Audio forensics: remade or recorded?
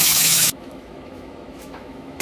remade